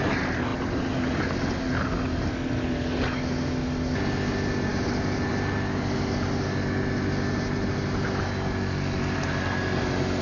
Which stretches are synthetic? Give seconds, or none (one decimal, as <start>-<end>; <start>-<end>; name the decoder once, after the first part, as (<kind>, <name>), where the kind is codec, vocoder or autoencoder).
none

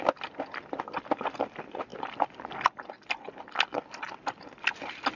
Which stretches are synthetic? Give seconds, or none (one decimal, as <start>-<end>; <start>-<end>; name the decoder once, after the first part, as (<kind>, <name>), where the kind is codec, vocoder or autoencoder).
none

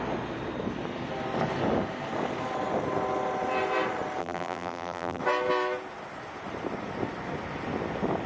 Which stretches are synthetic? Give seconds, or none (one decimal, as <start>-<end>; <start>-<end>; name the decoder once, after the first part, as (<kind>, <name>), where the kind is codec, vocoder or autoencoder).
4.2-5.2 (vocoder, BigVGAN v2)

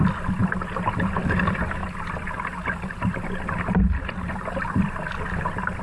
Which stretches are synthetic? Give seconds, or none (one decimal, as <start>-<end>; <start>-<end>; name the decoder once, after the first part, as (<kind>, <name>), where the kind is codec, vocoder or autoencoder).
none

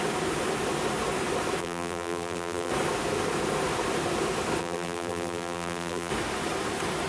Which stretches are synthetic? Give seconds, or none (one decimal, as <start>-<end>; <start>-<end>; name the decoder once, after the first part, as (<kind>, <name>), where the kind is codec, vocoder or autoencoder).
1.6-2.7 (vocoder, BigVGAN v2); 4.6-6.1

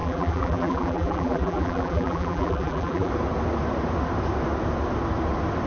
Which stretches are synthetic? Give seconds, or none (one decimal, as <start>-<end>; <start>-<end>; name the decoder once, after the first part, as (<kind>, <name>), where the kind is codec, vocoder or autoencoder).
0.0-3.1 (vocoder, BigVGAN v2)

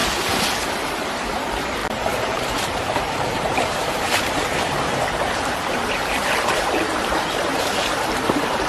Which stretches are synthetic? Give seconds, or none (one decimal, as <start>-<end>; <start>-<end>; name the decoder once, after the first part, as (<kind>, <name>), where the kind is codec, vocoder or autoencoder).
0.7-8.7 (vocoder, BigVGAN v2)